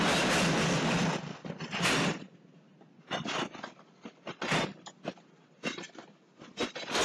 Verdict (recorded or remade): recorded